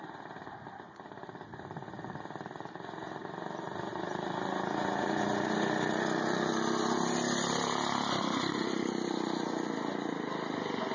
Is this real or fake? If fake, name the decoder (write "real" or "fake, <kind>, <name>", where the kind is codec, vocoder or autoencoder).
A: real